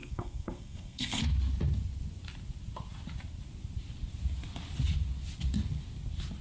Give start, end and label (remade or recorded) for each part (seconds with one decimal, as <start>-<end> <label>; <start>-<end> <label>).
0.0-1.2 remade; 1.2-6.4 recorded